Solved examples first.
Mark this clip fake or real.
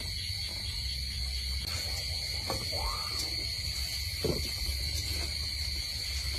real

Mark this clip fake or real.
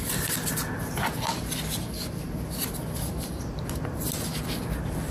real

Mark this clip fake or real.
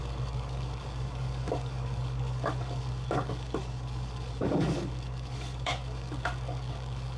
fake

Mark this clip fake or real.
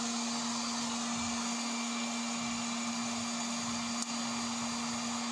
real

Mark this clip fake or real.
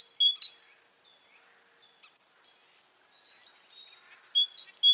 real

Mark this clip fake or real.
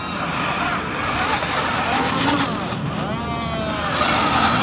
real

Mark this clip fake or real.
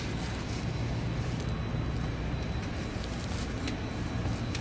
real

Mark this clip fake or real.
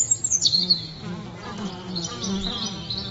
real